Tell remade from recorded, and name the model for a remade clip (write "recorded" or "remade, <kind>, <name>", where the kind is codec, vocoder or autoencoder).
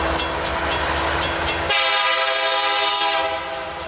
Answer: recorded